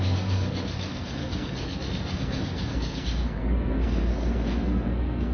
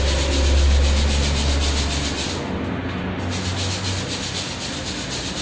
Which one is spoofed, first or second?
first